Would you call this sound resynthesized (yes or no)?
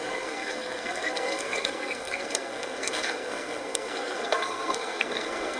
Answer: yes